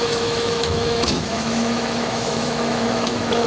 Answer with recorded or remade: remade